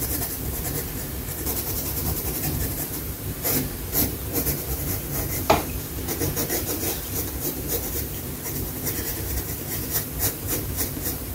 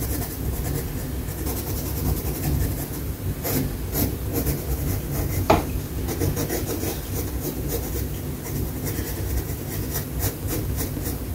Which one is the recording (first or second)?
second